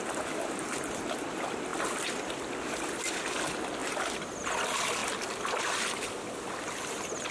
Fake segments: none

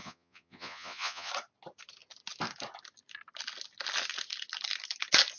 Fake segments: 0.0-1.3 (vocoder, Vocos)

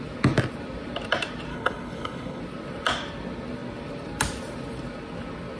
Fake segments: 1.5-2.4 (codec, HILCodec)